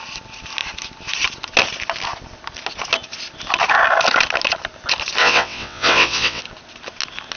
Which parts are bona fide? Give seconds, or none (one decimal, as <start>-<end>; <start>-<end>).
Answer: 0.0-5.2; 6.4-7.4